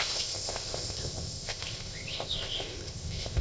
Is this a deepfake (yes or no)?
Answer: yes